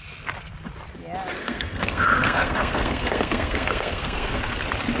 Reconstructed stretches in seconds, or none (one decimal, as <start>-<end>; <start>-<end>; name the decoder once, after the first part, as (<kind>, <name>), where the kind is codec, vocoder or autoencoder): 1.4-4.4 (codec, SNAC)

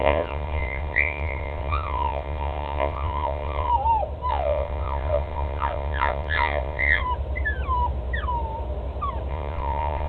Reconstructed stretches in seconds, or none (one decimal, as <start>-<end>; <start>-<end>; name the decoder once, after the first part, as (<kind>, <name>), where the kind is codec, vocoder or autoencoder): 0.0-3.7 (vocoder, WaveNeXt); 4.3-7.0; 9.3-10.1

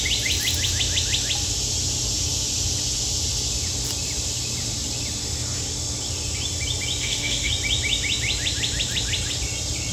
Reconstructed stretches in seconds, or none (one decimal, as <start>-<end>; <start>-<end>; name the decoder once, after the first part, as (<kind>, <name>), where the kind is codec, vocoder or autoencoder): 7.0-7.5 (autoencoder, DAC-VAE)

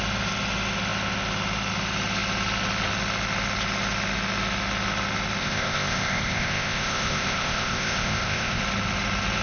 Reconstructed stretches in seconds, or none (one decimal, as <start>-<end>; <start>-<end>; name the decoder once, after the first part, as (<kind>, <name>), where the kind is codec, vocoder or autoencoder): 5.4-8.6 (codec, ZipCodec)

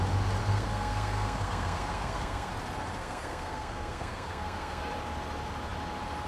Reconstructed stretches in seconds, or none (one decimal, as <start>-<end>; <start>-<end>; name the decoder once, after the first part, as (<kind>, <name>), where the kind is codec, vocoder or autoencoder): 0.4-2.5 (codec, SNAC); 3.0-4.8

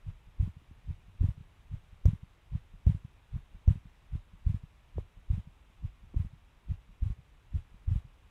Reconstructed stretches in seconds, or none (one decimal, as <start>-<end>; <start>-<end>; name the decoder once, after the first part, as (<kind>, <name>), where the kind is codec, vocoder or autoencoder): 1.4-4.0 (vocoder, BigVGAN v2); 5.8-7.5